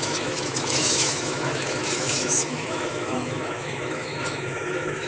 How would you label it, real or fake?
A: fake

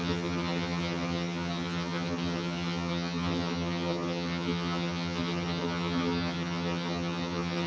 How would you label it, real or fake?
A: fake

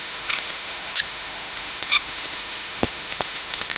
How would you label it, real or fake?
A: fake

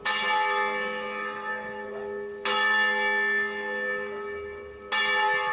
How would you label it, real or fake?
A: real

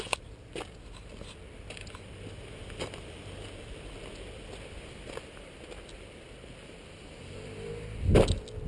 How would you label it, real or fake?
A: real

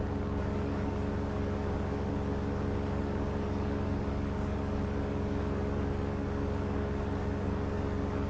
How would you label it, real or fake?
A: fake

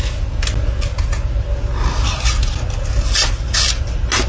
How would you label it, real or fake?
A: real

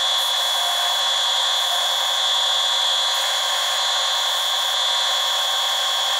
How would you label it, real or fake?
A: real